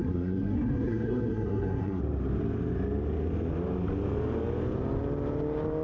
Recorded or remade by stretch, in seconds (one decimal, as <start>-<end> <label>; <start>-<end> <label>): 0.0-2.0 remade; 2.0-5.8 recorded